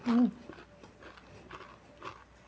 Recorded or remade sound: recorded